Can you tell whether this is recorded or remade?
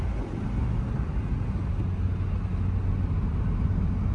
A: recorded